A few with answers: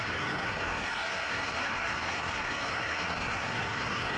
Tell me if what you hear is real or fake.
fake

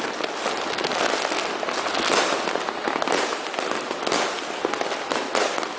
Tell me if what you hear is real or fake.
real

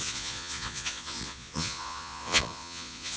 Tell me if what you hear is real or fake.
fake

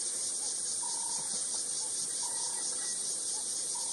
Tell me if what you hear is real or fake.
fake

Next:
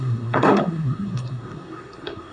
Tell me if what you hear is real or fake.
fake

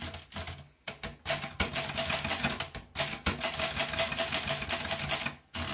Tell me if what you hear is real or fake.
real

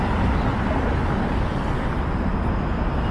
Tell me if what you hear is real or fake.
real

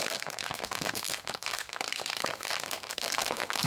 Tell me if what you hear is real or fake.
fake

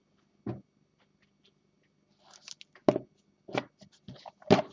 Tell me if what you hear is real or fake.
real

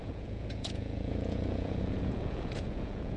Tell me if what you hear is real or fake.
fake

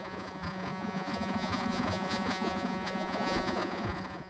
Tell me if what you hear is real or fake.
fake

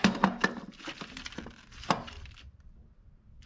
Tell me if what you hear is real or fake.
real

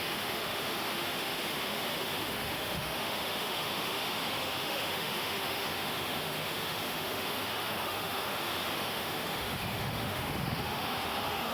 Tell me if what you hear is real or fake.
fake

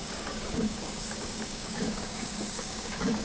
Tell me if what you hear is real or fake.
fake